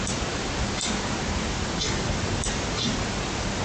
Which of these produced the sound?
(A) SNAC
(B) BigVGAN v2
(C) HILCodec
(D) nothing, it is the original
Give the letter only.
D